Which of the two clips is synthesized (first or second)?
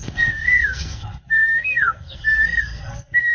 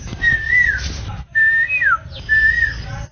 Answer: first